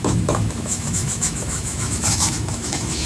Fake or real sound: fake